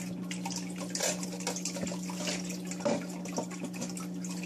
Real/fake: real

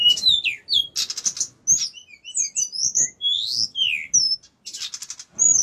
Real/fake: real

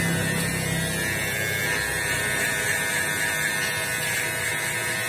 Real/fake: real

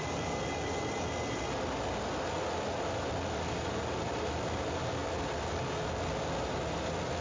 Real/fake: real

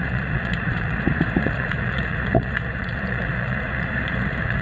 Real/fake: fake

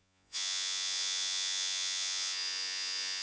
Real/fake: fake